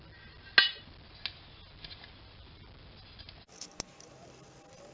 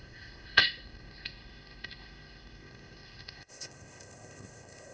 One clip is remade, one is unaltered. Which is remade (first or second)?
second